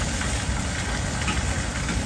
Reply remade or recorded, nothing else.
recorded